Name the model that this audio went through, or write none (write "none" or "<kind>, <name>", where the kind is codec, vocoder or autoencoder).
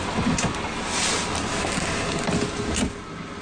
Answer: none